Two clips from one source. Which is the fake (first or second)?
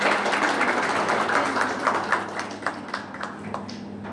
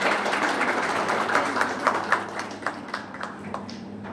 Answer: second